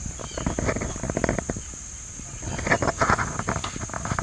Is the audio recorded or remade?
recorded